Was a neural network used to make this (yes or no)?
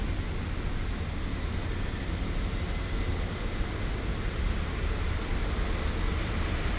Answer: no